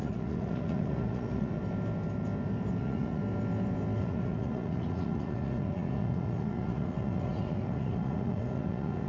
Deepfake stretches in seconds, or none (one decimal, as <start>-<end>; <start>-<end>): 0.0-1.6; 2.8-3.2; 4.0-9.1